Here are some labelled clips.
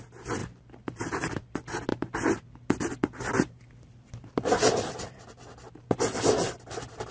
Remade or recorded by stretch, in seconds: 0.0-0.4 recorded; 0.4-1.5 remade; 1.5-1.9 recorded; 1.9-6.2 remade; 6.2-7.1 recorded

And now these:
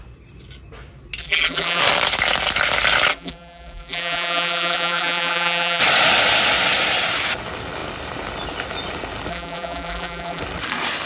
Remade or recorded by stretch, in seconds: 0.0-1.2 recorded; 1.2-1.8 remade; 1.8-3.1 recorded; 3.1-5.8 remade; 5.8-9.3 recorded; 9.3-10.4 remade; 10.4-11.1 recorded